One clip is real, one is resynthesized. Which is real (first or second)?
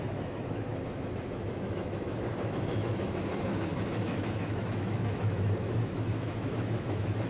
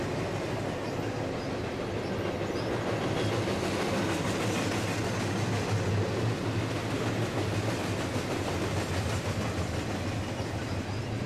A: second